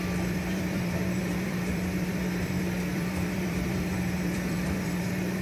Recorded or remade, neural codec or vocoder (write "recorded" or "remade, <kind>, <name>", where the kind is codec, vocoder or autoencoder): remade, vocoder, BigVGAN v2